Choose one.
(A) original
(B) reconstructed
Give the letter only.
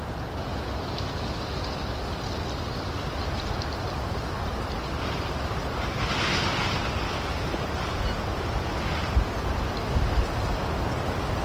A